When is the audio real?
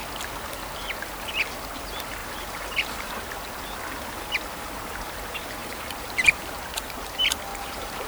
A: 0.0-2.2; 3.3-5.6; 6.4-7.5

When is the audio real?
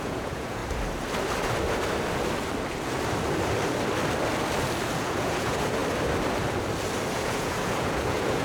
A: 0.6-5.0; 5.8-7.1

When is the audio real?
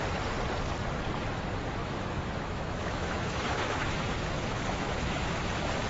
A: 0.0-1.8; 5.3-5.9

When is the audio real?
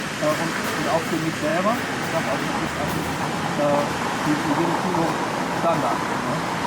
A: 0.0-6.7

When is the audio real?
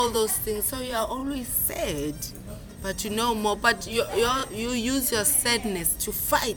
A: 1.2-3.9; 4.4-5.8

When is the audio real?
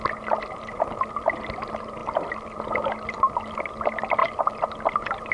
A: 0.0-5.3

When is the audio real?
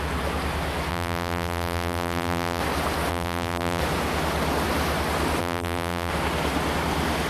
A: 0.0-0.9; 2.6-3.1; 3.8-5.4; 6.1-7.3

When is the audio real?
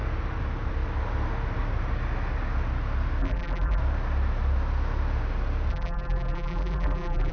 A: 0.0-3.2; 3.8-5.7